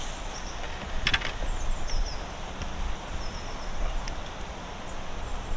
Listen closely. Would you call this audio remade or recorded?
recorded